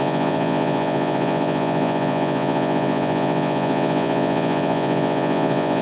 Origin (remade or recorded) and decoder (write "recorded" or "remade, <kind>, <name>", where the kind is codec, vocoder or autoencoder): remade, vocoder, Vocos